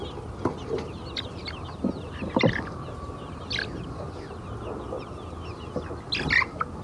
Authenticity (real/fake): real